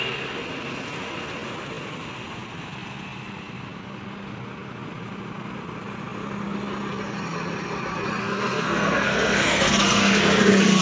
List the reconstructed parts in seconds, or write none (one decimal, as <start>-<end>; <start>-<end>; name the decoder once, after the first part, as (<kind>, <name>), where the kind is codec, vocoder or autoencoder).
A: 8.2-10.8 (codec, SNAC)